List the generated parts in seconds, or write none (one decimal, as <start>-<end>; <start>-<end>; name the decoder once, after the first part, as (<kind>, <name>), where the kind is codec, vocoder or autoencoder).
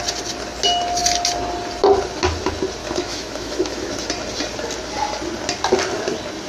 2.8-3.9 (autoencoder, DAC-VAE)